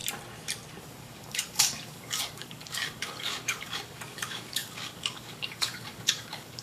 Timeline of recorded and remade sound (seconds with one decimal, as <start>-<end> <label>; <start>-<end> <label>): 0.0-0.8 recorded; 0.8-6.6 remade